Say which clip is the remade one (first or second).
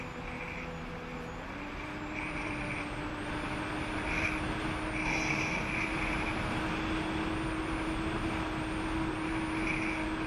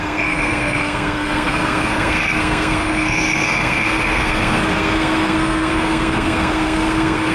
second